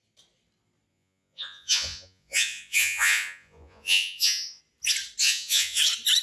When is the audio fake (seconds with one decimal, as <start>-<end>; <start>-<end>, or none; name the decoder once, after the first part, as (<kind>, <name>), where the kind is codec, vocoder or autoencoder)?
0.9-4.6 (vocoder, Vocos); 5.2-5.8